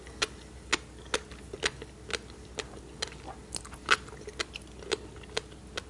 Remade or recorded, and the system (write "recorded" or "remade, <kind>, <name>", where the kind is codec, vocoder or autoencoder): recorded